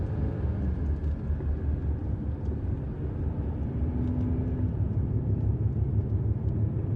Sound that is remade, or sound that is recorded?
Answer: recorded